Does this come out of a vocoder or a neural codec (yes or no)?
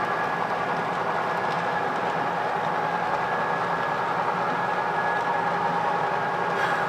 no